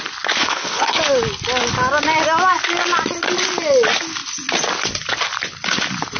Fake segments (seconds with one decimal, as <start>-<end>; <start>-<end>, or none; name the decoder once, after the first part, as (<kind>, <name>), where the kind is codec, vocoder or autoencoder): 0.4-1.0 (codec, HILCodec)